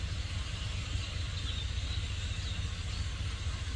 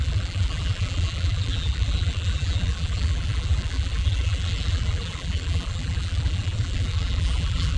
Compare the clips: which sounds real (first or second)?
first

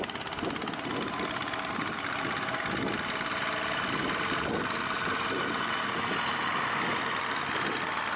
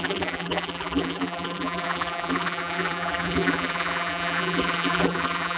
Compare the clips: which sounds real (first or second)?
first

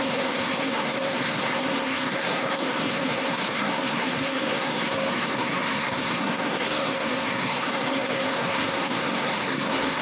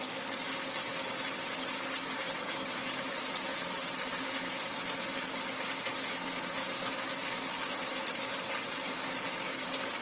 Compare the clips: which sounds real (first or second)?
second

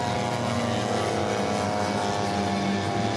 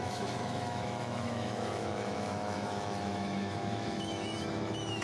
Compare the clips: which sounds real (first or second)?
first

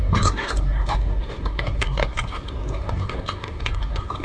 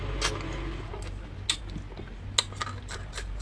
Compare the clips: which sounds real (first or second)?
second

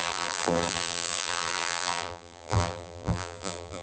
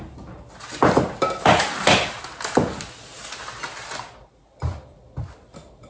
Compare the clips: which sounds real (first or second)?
second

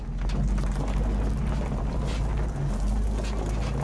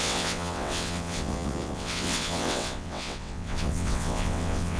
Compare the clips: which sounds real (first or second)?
first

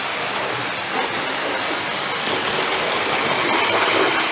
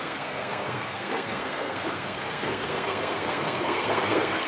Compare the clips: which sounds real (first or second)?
first